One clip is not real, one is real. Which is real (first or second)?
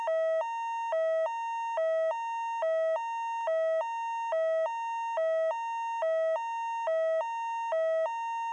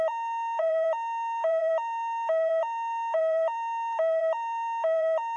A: first